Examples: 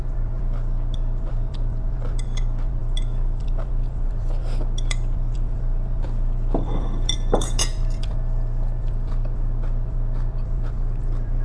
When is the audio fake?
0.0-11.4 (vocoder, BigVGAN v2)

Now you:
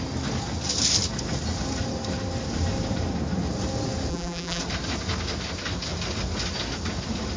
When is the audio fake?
4.1-4.6 (vocoder, BigVGAN v2)

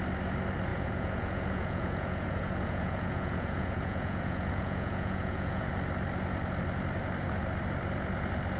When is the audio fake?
0.7-5.7 (vocoder, Vocos)

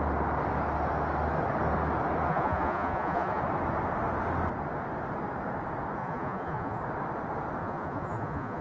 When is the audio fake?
2.3-3.4 (vocoder, Vocos); 6.0-6.8; 7.6-8.6

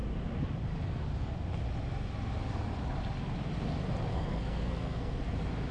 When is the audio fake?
4.1-5.2 (codec, SNAC)